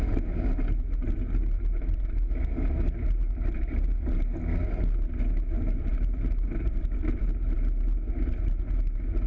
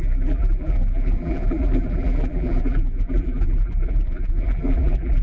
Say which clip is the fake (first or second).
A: second